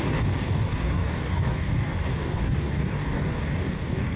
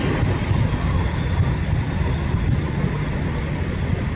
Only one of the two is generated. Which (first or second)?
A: first